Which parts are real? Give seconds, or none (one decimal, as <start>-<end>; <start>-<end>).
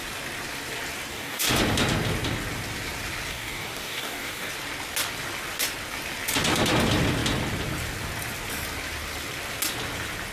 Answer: 0.0-1.1; 1.6-3.3; 4.5-10.3